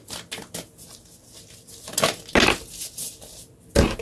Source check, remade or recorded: recorded